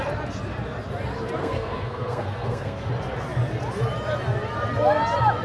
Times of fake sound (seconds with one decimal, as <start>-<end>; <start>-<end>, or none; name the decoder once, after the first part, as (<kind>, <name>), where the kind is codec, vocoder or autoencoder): 1.4-2.9 (codec, SNAC)